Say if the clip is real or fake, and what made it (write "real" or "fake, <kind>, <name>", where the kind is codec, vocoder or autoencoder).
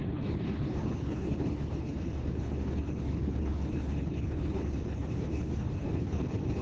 fake, codec, HILCodec